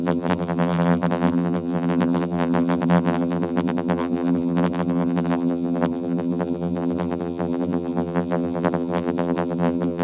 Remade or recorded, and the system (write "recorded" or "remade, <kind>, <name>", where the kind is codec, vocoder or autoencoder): remade, vocoder, BigVGAN v2